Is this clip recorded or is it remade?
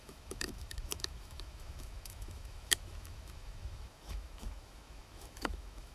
remade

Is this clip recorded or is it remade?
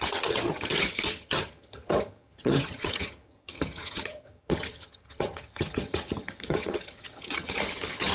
remade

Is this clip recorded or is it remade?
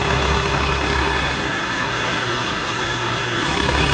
remade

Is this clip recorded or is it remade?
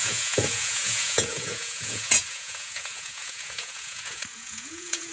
remade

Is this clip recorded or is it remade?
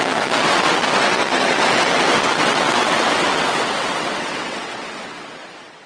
remade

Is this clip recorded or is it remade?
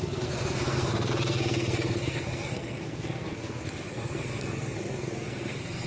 remade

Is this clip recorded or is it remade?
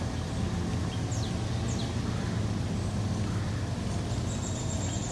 recorded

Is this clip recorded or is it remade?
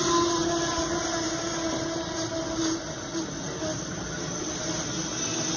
recorded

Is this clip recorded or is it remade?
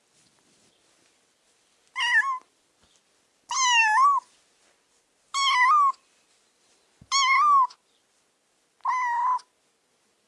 recorded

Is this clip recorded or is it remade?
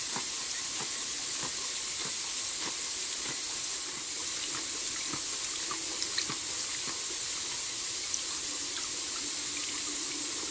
recorded